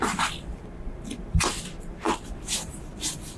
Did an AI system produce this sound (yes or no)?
yes